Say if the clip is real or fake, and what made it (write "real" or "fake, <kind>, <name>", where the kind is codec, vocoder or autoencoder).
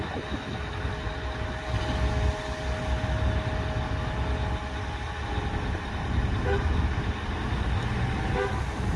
real